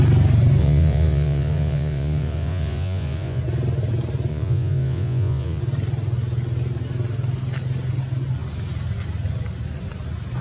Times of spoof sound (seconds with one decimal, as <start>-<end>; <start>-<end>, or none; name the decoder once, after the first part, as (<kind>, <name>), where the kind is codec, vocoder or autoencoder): 0.6-3.4 (vocoder, Vocos); 4.3-5.6